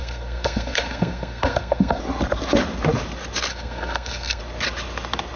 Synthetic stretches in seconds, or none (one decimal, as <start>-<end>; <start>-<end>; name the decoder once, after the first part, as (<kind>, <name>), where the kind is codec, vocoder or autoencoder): 0.0-2.0 (codec, SNAC); 3.5-4.4